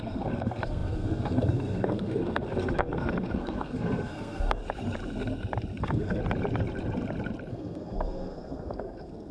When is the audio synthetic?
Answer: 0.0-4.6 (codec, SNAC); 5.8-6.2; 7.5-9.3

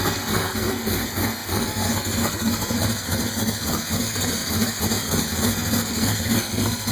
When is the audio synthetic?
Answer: 0.0-6.9 (codec, SNAC)

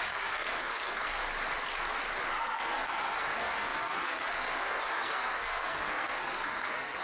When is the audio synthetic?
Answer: 0.0-1.2 (codec, SNAC); 2.3-7.0